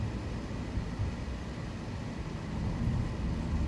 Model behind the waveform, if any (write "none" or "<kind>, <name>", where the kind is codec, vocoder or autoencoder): none